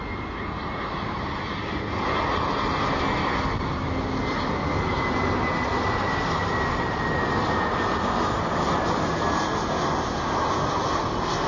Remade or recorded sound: recorded